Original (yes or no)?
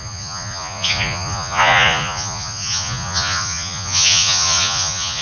no